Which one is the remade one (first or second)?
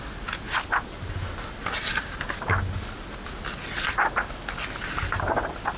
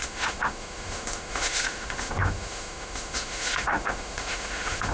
second